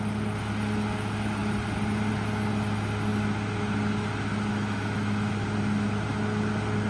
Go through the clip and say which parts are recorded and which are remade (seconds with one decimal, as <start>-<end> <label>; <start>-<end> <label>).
0.0-4.5 recorded; 4.5-5.3 remade; 5.3-6.9 recorded